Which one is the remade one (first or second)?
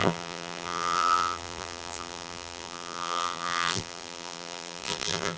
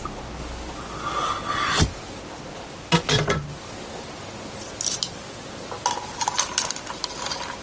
first